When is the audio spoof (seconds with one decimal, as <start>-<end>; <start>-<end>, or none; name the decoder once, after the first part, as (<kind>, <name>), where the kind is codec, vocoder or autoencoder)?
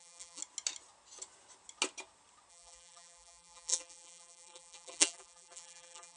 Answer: 0.0-0.4 (vocoder, BigVGAN v2); 2.5-6.2